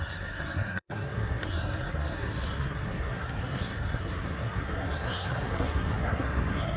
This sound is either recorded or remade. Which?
remade